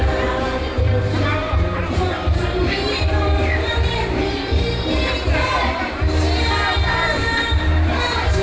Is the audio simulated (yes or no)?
yes